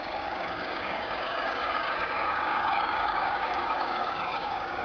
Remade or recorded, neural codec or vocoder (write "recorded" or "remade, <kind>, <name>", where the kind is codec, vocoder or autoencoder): remade, codec, DAC